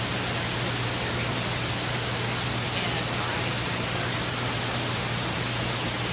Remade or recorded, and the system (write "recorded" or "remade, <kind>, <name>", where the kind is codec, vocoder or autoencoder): recorded